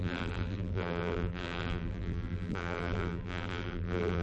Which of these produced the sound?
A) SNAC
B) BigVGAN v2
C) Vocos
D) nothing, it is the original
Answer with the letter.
B